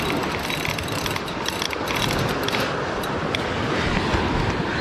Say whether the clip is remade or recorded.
recorded